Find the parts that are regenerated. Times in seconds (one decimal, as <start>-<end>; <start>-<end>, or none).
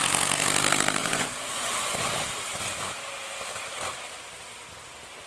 1.0-2.1